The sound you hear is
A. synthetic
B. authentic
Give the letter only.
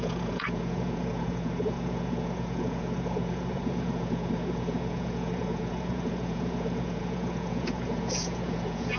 A